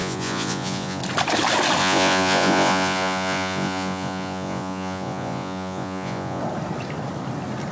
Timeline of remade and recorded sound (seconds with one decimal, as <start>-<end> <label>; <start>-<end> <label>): 0.0-1.0 remade; 1.0-1.8 recorded; 1.8-6.4 remade; 6.4-7.7 recorded